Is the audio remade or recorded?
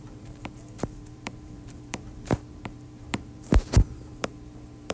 remade